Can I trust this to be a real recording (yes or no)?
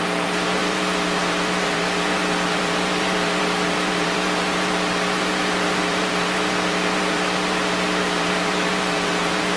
no